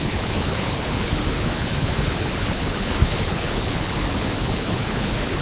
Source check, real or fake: fake